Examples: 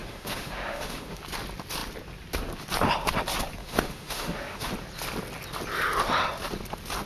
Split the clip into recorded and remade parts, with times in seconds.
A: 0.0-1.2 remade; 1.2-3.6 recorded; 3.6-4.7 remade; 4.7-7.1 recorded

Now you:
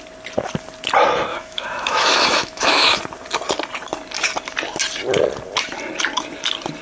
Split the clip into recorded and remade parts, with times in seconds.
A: 0.0-1.3 recorded; 1.3-3.0 remade; 3.0-6.8 recorded

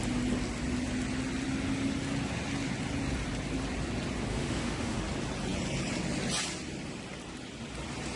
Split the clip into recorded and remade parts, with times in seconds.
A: 0.0-4.3 recorded; 4.3-5.0 remade; 5.0-8.2 recorded

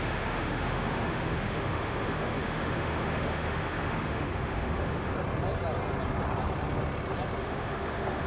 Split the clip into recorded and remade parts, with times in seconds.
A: 0.0-5.1 remade; 5.1-7.4 recorded; 7.4-8.3 remade

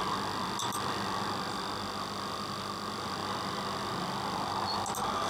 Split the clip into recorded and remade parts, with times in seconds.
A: 0.0-5.3 recorded

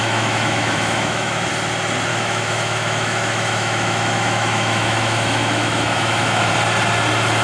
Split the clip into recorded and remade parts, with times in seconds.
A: 0.0-1.5 remade; 1.5-2.1 recorded; 2.1-6.5 remade; 6.5-7.4 recorded